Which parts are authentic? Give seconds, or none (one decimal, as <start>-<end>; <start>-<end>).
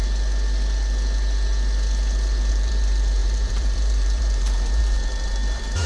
0.0-2.5